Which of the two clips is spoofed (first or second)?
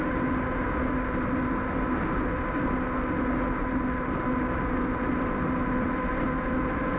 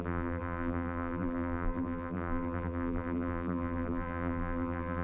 second